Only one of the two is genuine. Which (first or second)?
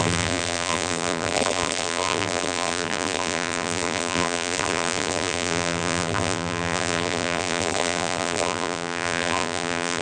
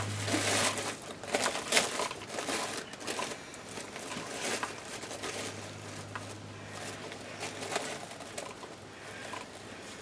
second